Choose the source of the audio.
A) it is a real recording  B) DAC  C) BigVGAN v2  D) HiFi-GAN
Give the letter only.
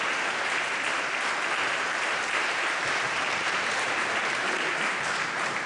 C